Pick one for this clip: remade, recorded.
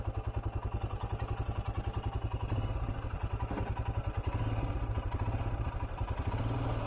recorded